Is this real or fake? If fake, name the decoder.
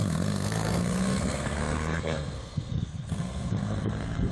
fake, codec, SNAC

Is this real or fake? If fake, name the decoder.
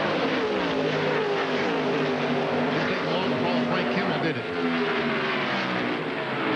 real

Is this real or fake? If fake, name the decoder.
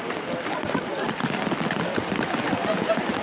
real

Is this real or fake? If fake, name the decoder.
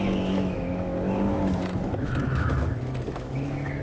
fake, autoencoder, DAC-VAE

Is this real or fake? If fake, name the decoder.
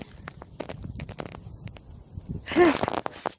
real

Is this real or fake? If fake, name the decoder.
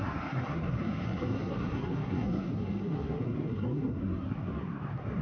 fake, codec, SNAC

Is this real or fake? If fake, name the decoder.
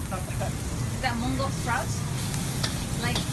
real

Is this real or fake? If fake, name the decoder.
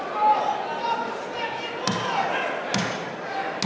real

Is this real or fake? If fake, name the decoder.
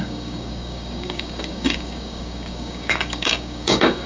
fake, codec, DAC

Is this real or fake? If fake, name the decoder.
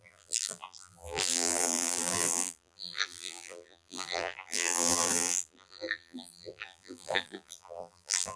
fake, vocoder, BigVGAN v2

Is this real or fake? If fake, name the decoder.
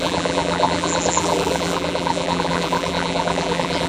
fake, vocoder, BigVGAN v2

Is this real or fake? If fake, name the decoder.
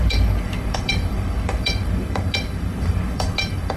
fake, codec, DAC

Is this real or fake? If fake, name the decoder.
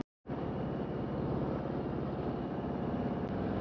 real